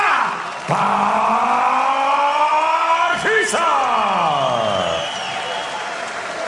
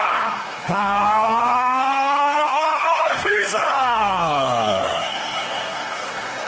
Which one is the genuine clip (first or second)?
first